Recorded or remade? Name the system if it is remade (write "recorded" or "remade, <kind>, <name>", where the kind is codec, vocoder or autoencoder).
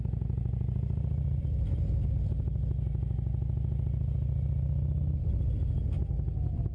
recorded